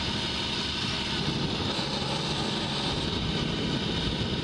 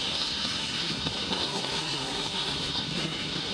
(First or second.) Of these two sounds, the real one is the first